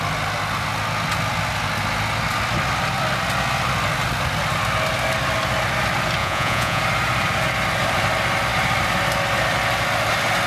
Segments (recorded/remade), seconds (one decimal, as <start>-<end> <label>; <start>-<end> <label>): 0.0-6.2 recorded; 6.2-6.8 remade; 6.8-10.5 recorded